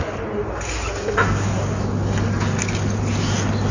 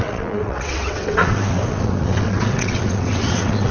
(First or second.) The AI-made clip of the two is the second